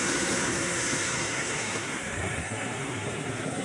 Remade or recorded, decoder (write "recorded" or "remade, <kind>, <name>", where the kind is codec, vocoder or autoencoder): remade, codec, SNAC